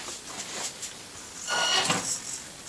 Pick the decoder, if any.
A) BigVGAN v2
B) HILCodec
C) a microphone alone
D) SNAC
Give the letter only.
C